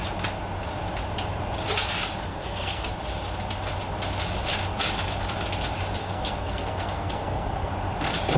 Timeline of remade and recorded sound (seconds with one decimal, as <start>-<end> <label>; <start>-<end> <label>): 0.0-2.3 recorded; 2.3-2.9 remade; 2.9-6.0 recorded; 6.0-7.7 remade; 7.7-8.4 recorded